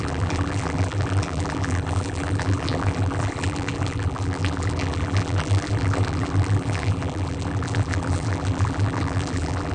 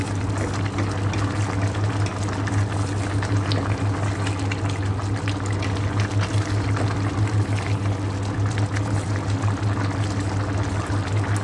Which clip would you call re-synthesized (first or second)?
first